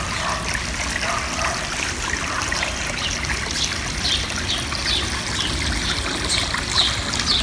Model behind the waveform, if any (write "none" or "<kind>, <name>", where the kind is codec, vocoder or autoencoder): none